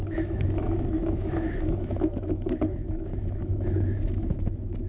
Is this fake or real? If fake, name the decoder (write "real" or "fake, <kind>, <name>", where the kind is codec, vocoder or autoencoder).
fake, autoencoder, DAC-VAE